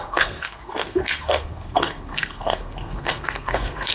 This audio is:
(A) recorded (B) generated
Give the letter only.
B